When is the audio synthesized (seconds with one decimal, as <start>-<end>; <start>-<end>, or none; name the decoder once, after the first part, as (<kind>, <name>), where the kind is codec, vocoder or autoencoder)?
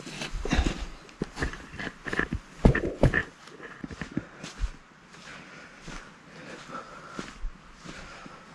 3.2-4.4 (vocoder, BigVGAN v2)